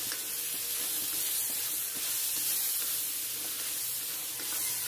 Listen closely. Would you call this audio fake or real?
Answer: real